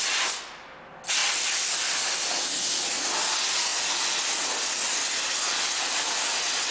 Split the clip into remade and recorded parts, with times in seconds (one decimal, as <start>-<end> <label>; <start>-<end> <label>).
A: 0.0-1.2 recorded; 1.2-2.3 remade; 2.3-6.7 recorded